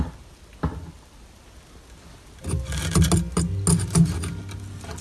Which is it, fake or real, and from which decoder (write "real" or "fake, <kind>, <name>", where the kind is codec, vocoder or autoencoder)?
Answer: real